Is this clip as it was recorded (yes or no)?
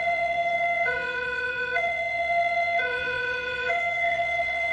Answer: no